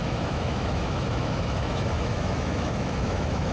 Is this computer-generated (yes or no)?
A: yes